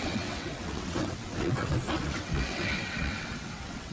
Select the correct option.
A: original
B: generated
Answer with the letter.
B